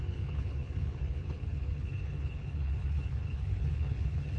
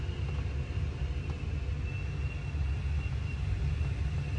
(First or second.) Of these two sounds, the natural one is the second